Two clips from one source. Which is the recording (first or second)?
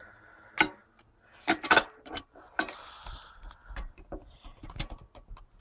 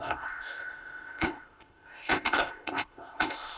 first